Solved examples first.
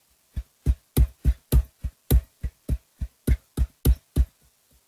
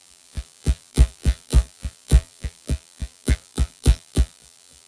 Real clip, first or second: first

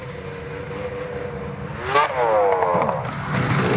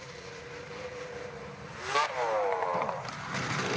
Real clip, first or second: first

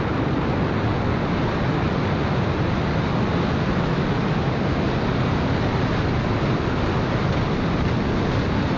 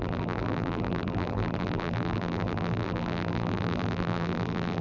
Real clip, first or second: first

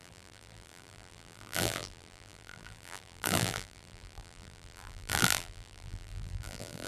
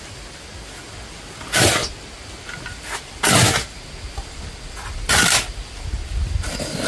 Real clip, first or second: second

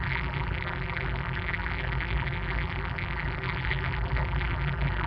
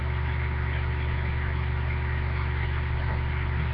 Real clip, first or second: second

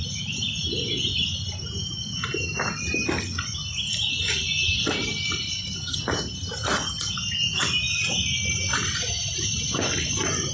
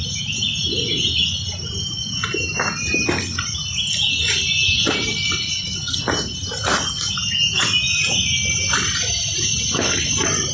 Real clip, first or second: second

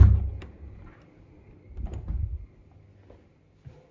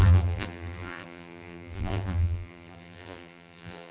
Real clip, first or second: first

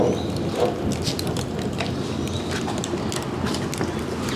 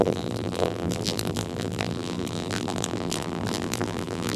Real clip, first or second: first